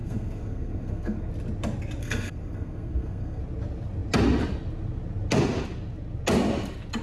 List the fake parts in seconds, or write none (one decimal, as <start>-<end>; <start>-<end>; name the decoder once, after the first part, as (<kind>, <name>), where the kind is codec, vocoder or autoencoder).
0.0-1.3 (codec, SNAC); 2.0-3.4